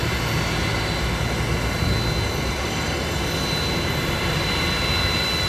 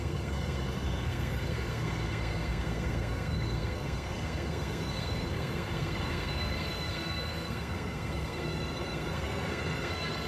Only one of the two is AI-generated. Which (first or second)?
second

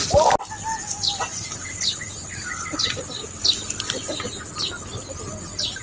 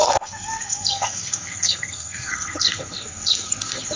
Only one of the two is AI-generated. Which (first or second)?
second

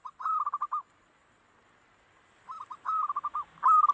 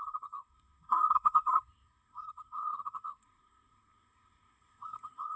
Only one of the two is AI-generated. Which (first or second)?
second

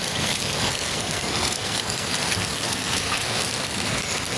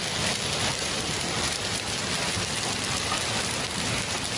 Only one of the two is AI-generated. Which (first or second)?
first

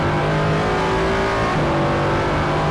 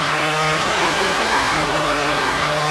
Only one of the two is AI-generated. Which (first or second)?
second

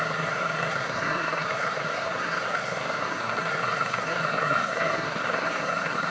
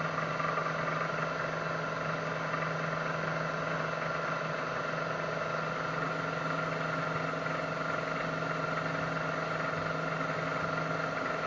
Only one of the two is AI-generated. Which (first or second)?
first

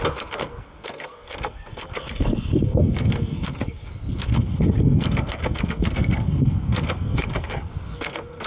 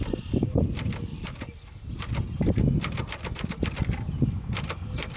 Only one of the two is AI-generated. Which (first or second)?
first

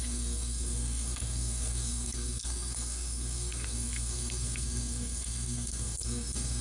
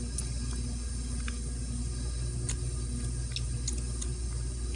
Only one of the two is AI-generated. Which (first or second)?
first